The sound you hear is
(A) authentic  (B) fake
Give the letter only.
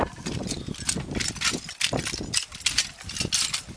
A